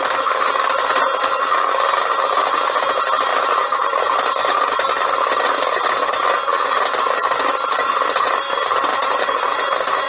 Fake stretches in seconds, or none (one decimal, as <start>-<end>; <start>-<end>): 3.3-4.3; 7.8-8.4; 8.9-9.6